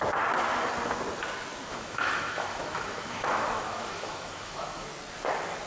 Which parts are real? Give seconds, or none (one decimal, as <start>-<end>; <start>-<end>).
0.0-1.7; 4.9-5.7